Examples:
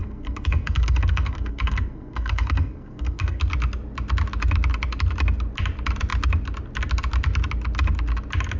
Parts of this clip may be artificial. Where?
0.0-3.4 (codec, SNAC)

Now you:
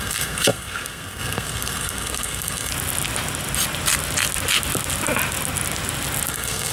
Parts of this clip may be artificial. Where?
0.0-2.7 (codec, SNAC); 6.3-6.7

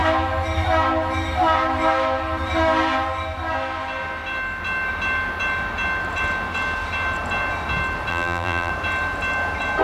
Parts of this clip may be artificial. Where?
8.1-8.7 (vocoder, BigVGAN v2)